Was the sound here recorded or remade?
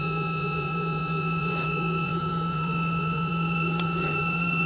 remade